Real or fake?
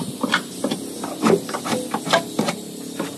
real